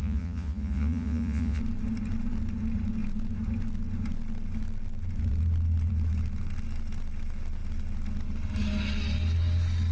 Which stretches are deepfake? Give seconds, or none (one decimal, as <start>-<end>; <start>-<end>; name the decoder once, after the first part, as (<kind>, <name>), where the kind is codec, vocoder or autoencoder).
0.0-1.6 (vocoder, Vocos)